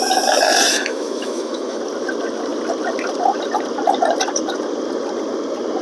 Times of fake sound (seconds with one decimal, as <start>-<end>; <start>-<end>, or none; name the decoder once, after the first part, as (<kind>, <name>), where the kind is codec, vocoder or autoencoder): 0.7-1.8 (autoencoder, DAC-VAE)